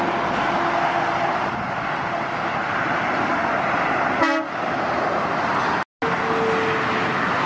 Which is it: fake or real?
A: real